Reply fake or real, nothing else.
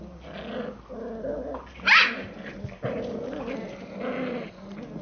real